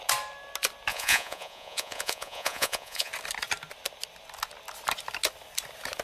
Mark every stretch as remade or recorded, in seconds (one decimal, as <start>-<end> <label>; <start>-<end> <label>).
0.0-0.9 recorded; 0.9-3.1 remade; 3.1-6.0 recorded